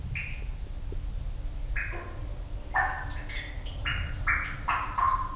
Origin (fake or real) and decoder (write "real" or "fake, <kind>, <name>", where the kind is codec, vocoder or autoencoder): real